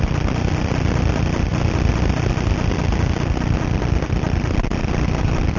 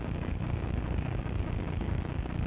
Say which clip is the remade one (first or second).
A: second